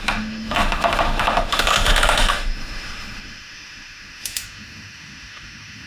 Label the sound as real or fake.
fake